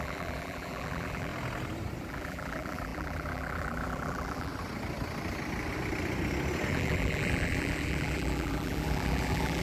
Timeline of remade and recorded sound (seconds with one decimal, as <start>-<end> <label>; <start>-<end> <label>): 0.0-1.3 remade; 1.3-2.1 recorded; 2.1-4.5 remade; 4.5-6.7 recorded; 6.7-9.6 remade